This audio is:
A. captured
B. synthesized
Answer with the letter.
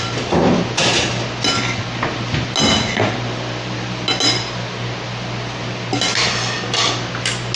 A